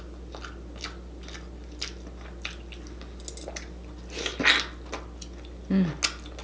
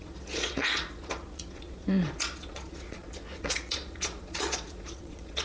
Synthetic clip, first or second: second